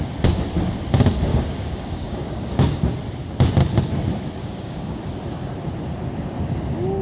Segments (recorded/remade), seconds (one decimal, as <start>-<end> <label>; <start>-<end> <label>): 0.0-1.3 recorded; 1.3-2.8 remade; 2.8-4.4 recorded; 4.4-5.0 remade; 5.0-7.0 recorded